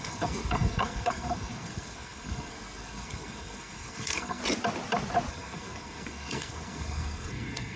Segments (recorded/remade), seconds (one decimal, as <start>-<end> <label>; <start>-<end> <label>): 0.0-4.4 remade; 4.4-5.3 recorded; 5.3-7.8 remade